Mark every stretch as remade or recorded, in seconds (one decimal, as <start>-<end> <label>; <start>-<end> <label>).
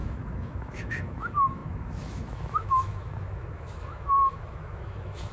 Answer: 0.0-5.3 remade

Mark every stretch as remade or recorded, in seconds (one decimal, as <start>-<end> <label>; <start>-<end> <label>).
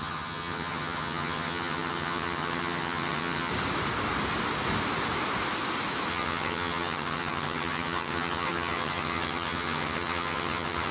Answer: 0.0-3.5 remade; 3.5-6.1 recorded; 6.1-10.9 remade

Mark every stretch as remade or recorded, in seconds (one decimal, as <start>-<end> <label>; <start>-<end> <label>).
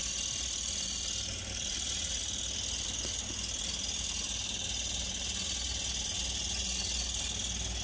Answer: 0.0-7.8 recorded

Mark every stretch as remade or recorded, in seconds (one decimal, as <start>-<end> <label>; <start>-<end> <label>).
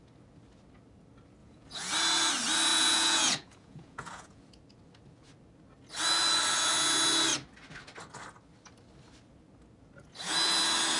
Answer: 0.0-1.4 recorded; 1.4-1.9 remade; 1.9-2.7 recorded; 2.7-4.4 remade; 4.4-11.0 recorded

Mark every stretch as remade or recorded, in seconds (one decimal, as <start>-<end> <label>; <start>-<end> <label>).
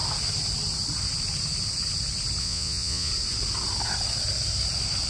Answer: 0.0-2.4 recorded; 2.4-3.1 remade; 3.1-5.1 recorded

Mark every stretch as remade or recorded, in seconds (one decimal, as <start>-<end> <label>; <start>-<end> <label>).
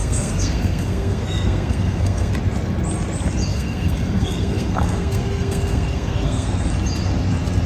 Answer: 0.0-2.3 remade; 2.3-3.5 recorded; 3.5-6.7 remade; 6.7-7.7 recorded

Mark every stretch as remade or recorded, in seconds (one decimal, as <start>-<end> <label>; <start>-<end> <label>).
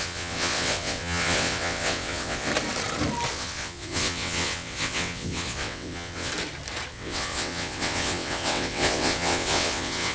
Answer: 0.0-2.5 remade; 2.5-3.3 recorded; 3.3-6.3 remade; 6.3-6.9 recorded; 6.9-10.1 remade